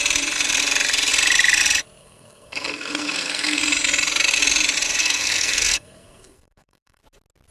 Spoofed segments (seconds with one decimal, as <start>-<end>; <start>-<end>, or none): 2.0-3.6; 5.0-7.0